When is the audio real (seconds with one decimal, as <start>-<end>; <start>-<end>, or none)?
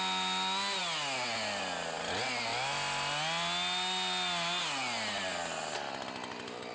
0.0-6.7